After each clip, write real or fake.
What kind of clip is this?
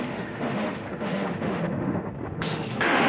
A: fake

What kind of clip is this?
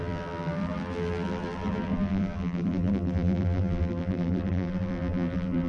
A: fake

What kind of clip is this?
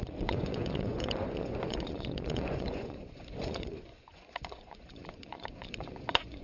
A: fake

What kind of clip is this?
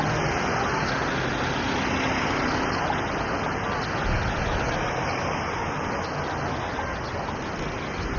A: real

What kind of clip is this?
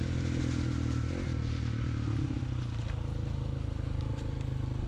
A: real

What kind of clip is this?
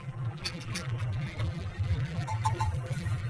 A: fake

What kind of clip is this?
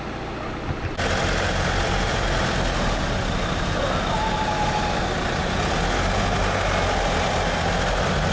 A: real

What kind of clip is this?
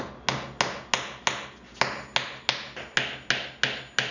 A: real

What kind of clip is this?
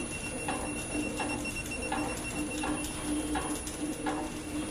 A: real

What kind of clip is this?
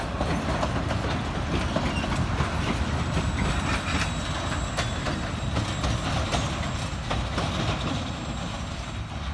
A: real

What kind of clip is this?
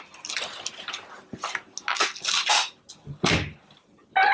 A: real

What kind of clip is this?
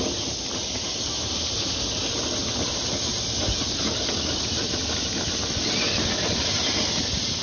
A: real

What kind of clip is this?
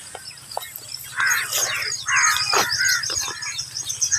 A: real